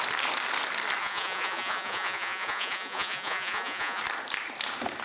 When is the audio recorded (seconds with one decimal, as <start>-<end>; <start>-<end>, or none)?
0.0-1.0; 4.0-5.0